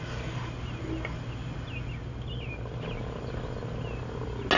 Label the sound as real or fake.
real